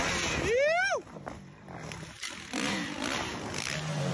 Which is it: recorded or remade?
recorded